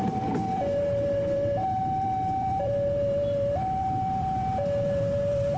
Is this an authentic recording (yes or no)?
no